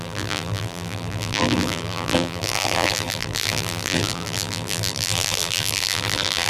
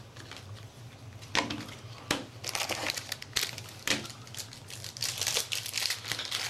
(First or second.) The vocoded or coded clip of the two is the first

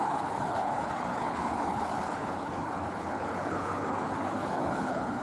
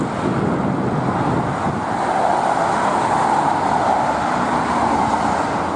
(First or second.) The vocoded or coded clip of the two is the first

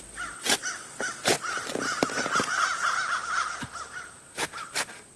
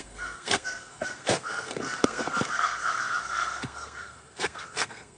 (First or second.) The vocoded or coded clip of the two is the second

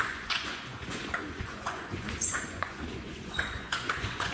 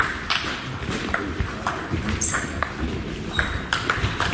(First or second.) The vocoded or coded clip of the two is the first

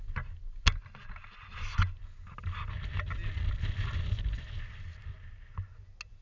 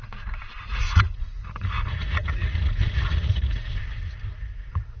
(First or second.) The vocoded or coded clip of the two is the second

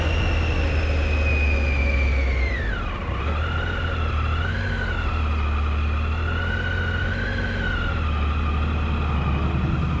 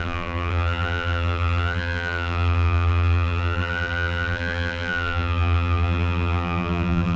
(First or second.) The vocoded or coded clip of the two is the second